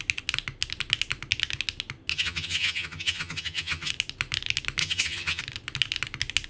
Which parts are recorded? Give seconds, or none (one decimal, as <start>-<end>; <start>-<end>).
0.0-2.1; 3.9-4.8; 5.4-6.5